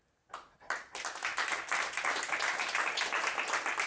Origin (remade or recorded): recorded